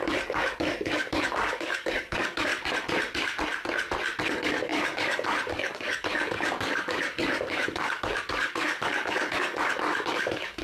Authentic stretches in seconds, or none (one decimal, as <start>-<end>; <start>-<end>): 2.5-4.3